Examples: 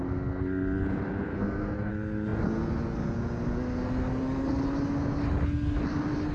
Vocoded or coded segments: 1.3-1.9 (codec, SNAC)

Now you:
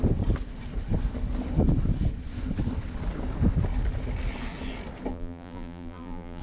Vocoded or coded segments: 5.1-6.4 (vocoder, BigVGAN v2)

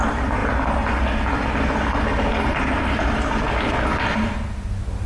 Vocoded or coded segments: none